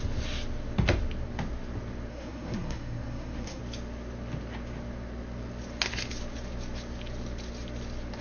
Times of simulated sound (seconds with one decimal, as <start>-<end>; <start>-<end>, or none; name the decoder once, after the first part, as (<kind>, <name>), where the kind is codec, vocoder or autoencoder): 2.1-3.6 (codec, SNAC)